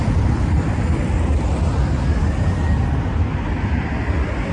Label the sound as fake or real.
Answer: real